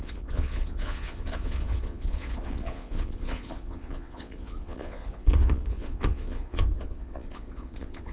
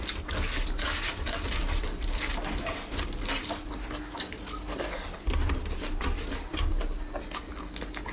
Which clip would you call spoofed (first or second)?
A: first